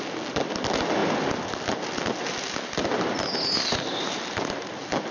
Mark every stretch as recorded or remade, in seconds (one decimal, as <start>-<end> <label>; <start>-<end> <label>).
0.0-5.1 recorded